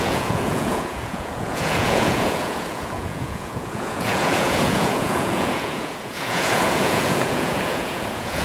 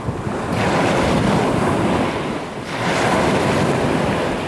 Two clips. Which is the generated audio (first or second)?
first